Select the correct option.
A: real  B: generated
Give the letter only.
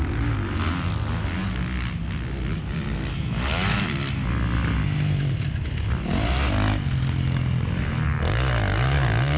A